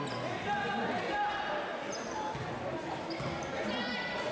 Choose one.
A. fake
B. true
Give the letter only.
B